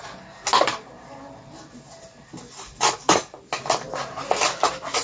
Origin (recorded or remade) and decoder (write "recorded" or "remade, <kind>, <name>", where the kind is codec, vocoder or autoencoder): recorded